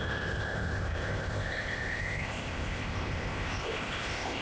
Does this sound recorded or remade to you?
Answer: remade